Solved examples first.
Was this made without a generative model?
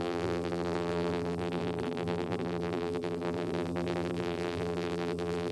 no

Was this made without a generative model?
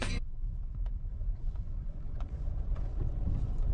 no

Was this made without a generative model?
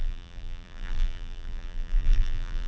no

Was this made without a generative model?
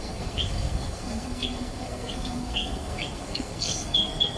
no